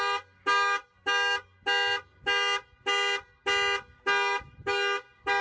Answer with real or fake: real